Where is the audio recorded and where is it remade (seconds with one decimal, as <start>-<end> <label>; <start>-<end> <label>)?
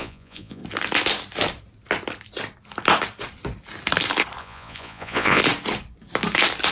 0.0-0.6 remade; 0.6-4.4 recorded; 4.4-5.4 remade; 5.4-6.7 recorded